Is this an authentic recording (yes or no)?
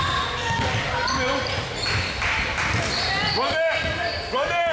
yes